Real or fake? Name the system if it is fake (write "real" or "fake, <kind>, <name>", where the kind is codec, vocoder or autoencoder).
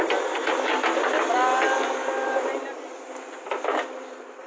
real